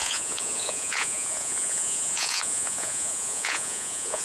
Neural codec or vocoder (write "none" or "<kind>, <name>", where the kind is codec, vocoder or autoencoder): vocoder, Vocos